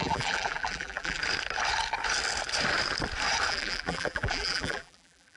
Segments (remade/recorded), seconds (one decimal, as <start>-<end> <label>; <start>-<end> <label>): 0.0-1.2 remade; 1.2-3.5 recorded; 3.5-5.4 remade

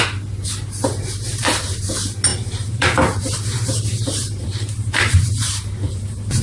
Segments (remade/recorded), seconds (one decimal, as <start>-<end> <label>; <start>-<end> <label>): 0.0-1.3 recorded; 1.3-1.8 remade; 1.8-2.3 recorded; 2.3-6.4 remade

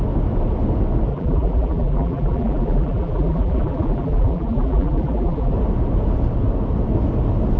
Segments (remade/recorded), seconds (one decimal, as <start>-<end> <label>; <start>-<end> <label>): 0.0-1.1 recorded; 1.1-5.5 remade; 5.5-7.6 recorded

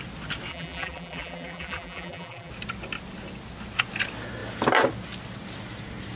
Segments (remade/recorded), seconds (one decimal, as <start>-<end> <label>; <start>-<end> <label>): 0.0-0.5 recorded; 0.5-2.5 remade; 2.5-6.2 recorded

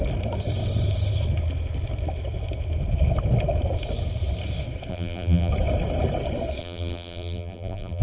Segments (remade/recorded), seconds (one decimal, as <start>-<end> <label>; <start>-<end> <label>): 0.0-4.9 recorded; 4.9-5.5 remade; 5.5-6.6 recorded; 6.6-8.0 remade

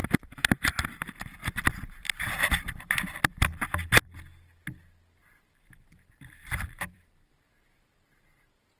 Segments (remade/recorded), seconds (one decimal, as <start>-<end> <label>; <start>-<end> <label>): 0.0-1.4 recorded; 1.4-2.9 remade; 2.9-5.2 recorded; 5.2-7.1 remade; 7.1-8.8 recorded

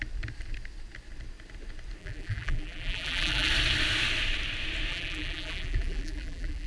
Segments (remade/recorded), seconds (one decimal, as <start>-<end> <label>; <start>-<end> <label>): 0.0-2.0 recorded; 2.0-3.5 remade; 3.5-4.9 recorded; 4.9-6.7 remade